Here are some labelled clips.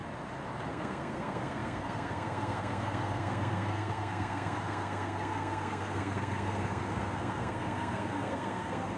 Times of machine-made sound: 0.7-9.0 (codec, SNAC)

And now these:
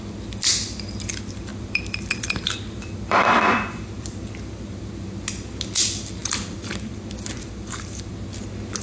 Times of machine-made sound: 1.5-4.8 (vocoder, BigVGAN v2); 6.2-8.1

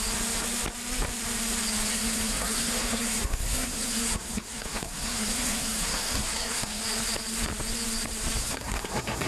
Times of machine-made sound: 1.9-6.8 (codec, SNAC); 8.4-9.3

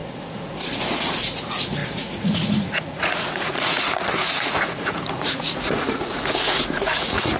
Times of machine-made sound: 0.0-7.4 (vocoder, Vocos)

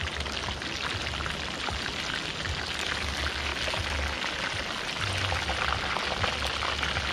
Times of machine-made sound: none

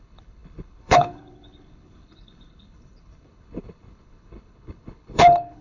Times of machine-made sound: 0.0-5.6 (codec, HILCodec)